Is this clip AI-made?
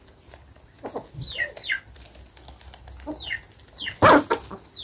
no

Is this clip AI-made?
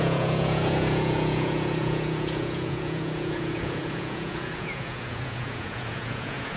yes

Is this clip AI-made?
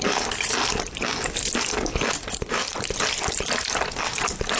no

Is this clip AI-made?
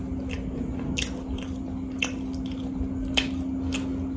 no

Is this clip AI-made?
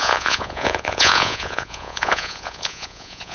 yes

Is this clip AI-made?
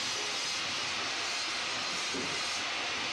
no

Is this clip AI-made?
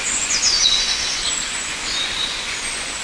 yes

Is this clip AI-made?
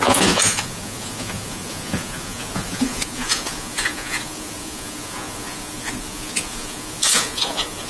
yes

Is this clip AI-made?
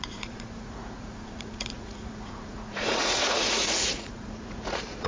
yes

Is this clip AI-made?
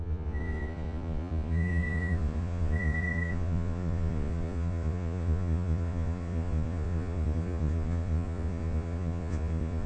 yes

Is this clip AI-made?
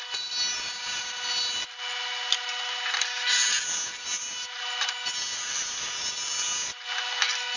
no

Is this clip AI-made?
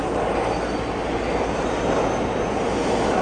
no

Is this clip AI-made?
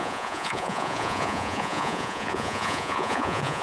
yes